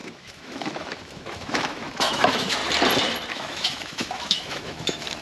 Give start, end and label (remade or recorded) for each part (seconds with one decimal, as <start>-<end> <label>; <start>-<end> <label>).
0.0-2.6 remade; 2.6-3.3 recorded; 3.3-5.2 remade